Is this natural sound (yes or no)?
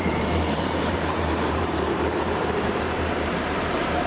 no